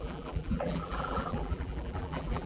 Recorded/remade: remade